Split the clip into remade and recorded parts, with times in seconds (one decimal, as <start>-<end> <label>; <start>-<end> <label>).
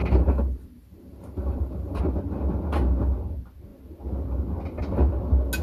0.0-2.0 remade; 2.0-5.6 recorded